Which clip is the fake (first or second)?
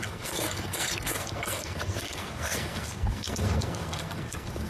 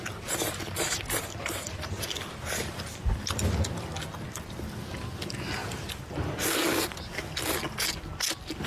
first